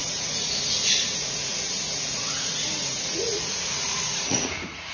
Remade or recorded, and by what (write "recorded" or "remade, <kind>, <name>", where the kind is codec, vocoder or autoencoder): remade, vocoder, Vocos